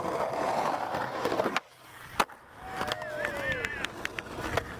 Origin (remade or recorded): recorded